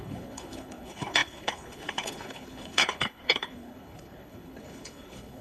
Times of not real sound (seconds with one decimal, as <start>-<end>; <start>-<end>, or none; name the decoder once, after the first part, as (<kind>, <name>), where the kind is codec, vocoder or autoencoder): 0.0-5.4 (codec, HILCodec)